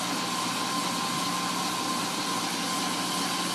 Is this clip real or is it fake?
real